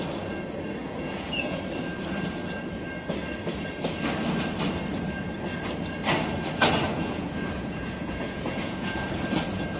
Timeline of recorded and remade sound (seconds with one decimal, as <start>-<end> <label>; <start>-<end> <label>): 0.0-0.8 recorded; 0.8-1.6 remade; 1.6-6.9 recorded; 6.9-9.0 remade; 9.0-9.8 recorded